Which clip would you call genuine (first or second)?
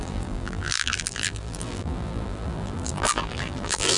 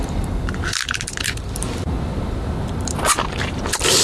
second